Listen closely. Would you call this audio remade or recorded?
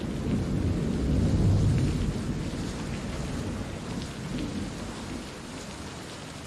recorded